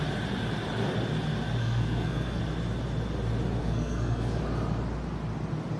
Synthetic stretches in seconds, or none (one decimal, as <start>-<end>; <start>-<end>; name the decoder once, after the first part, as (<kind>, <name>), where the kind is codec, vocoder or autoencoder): 1.6-2.4 (codec, SNAC); 3.6-4.4